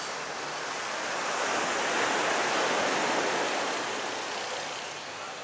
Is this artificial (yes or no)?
no